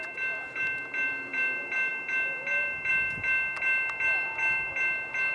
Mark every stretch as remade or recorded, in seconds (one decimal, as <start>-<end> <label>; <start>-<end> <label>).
0.0-5.3 recorded